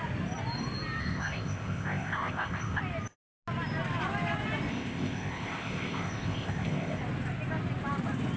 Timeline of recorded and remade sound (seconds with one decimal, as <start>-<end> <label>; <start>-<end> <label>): 0.0-1.0 recorded; 1.0-2.8 remade; 2.8-4.7 recorded; 4.7-7.0 remade; 7.0-8.4 recorded